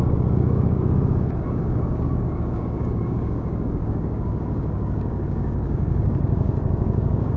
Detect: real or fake fake